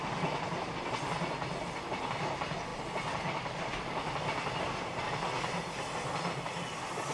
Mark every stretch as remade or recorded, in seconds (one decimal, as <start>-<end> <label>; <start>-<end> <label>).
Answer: 0.0-2.7 recorded; 2.7-5.0 remade; 5.0-7.1 recorded